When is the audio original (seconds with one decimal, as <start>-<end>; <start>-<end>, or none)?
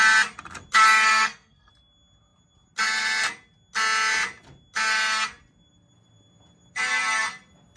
0.0-1.1; 1.7-7.8